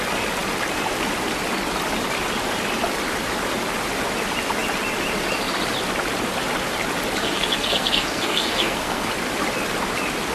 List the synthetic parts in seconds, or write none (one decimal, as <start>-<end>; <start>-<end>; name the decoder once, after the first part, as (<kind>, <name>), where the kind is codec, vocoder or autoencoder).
7.2-9.1 (codec, SNAC)